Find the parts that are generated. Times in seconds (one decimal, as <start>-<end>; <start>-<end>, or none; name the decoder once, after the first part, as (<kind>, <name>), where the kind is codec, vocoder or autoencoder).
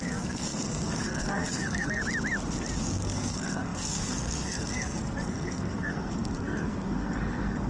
0.0-2.0 (codec, SNAC); 2.8-7.7